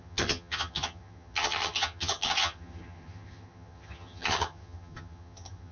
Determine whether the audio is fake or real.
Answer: fake